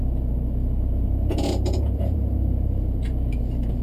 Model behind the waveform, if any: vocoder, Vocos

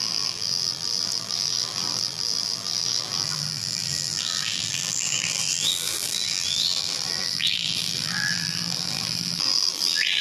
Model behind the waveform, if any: vocoder, BigVGAN v2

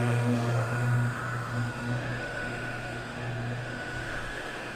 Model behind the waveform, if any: autoencoder, DAC-VAE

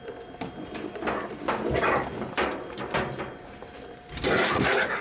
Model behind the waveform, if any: none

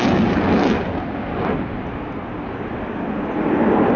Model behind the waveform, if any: none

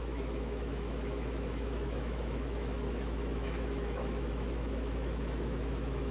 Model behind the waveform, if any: autoencoder, DAC-VAE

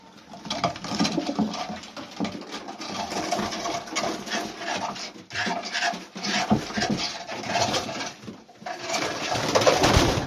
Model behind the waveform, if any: none